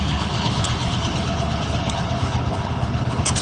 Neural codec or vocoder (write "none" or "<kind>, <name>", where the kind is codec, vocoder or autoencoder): codec, HILCodec